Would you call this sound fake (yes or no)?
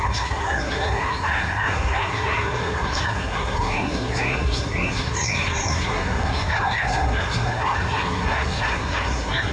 yes